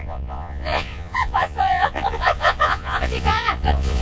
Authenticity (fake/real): fake